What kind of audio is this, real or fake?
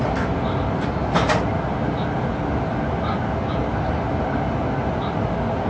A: real